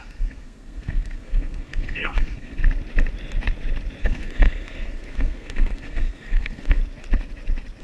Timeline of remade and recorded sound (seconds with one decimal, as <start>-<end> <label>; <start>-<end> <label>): 0.0-2.6 remade; 2.6-4.0 recorded; 4.0-6.8 remade; 6.8-7.8 recorded